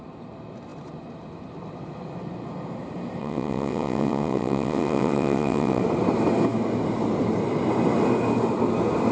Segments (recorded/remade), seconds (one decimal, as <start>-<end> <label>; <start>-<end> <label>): 0.0-3.2 recorded; 3.2-5.8 remade; 5.8-9.1 recorded